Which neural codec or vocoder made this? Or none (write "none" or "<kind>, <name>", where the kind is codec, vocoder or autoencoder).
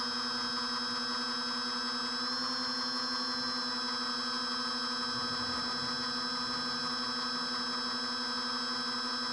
none